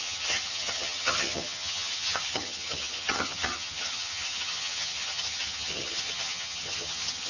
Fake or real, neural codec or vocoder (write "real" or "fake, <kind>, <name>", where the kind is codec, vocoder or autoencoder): fake, vocoder, HiFi-GAN